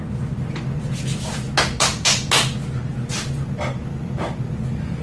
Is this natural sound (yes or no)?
yes